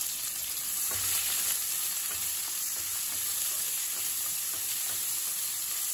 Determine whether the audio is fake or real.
fake